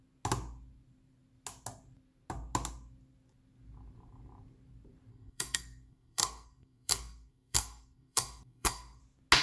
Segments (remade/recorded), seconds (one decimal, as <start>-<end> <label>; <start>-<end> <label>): 0.0-5.1 recorded; 5.1-9.0 remade; 9.0-9.4 recorded